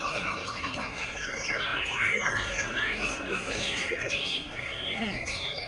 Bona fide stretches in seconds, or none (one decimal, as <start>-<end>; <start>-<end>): none